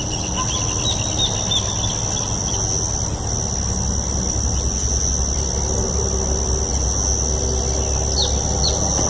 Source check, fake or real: real